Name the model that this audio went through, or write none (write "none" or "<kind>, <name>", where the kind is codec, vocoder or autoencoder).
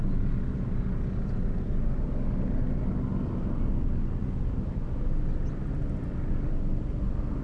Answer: none